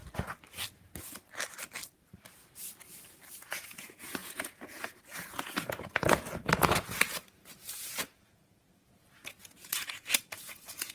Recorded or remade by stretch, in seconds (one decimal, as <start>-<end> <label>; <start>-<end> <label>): 0.0-3.3 recorded; 3.3-10.9 remade